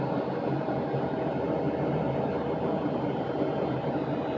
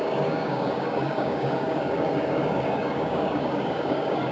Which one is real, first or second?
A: first